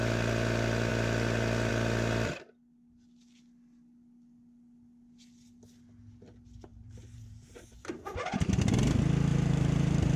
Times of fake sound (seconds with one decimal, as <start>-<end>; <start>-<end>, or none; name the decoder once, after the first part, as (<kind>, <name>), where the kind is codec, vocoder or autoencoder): 6.7-8.0 (vocoder, BigVGAN v2); 9.3-10.2